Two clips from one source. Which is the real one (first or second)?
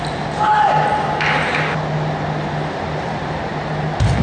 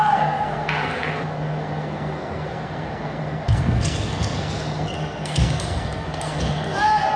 first